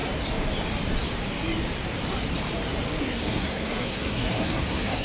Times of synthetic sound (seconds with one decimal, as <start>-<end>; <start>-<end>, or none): 3.0-5.0